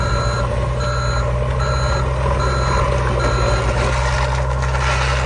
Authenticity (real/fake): real